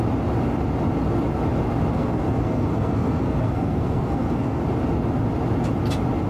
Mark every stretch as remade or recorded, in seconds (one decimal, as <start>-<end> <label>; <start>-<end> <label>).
0.0-1.9 recorded; 1.9-4.6 remade; 4.6-6.3 recorded